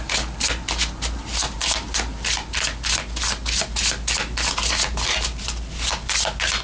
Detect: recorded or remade recorded